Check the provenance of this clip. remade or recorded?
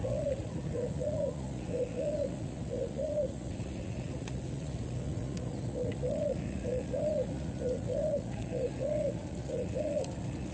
remade